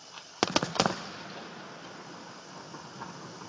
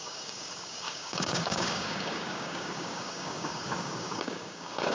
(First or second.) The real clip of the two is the first